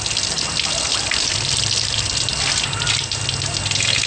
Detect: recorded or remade recorded